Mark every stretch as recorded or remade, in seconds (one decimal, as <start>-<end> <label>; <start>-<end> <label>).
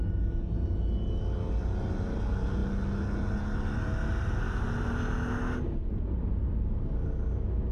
0.0-7.7 recorded